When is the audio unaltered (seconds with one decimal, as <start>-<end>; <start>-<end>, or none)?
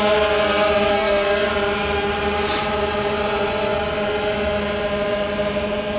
0.0-0.9; 1.5-6.0